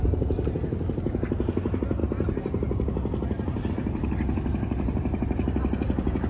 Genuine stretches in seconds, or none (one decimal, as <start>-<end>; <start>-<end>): 0.0-6.3